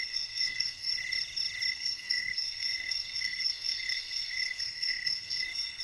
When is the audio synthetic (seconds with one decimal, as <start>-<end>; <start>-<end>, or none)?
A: 0.0-0.9; 1.7-5.8